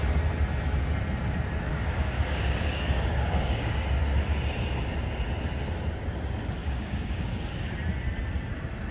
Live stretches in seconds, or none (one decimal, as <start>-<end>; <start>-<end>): 0.0-1.7; 4.0-6.6; 7.6-8.9